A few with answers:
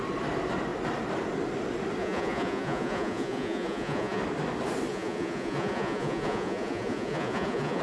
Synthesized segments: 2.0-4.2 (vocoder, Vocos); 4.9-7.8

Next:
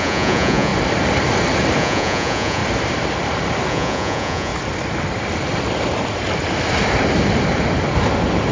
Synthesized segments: 0.0-0.7 (vocoder, Vocos); 1.8-2.6; 3.7-4.5

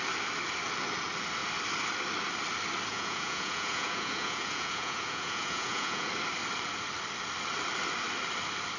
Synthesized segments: 2.9-6.1 (vocoder, Vocos)

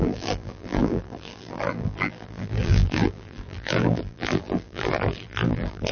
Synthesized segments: 0.0-5.9 (vocoder, BigVGAN v2)